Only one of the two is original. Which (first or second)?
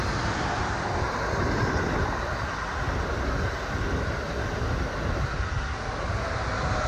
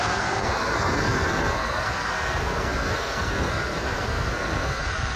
first